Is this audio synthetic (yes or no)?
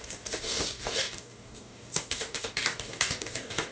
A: yes